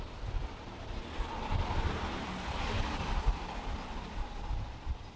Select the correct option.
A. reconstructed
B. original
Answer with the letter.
A